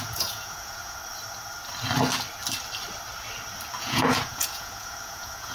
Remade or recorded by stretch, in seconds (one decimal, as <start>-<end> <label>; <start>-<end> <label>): 0.0-1.0 remade; 1.0-3.8 recorded; 3.8-5.5 remade